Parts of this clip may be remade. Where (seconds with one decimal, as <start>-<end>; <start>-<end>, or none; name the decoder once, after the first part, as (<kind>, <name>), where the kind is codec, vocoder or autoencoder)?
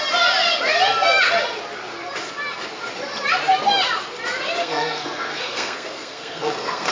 4.6-6.9 (codec, SNAC)